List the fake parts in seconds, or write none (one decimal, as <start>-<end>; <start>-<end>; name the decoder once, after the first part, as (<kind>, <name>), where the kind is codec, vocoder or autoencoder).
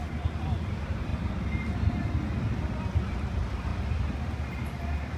0.0-1.1 (vocoder, BigVGAN v2); 2.8-3.7; 4.2-5.2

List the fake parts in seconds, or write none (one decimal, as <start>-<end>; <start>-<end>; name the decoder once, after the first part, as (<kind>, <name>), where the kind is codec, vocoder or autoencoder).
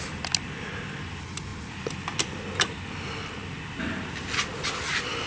none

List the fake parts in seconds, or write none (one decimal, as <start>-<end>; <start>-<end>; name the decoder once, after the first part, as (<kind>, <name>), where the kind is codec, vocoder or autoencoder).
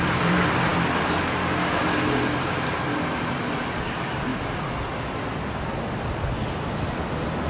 0.0-4.3 (vocoder, BigVGAN v2)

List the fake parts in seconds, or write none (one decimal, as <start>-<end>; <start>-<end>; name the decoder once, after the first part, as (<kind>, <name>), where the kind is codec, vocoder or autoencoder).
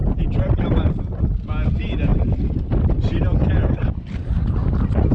0.0-0.9 (vocoder, BigVGAN v2)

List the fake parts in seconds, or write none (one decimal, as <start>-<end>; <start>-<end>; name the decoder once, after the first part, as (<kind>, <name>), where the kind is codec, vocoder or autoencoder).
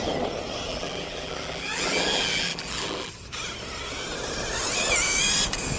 0.7-3.1 (vocoder, BigVGAN v2)